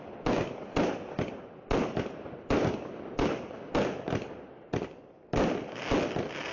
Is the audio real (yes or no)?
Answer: yes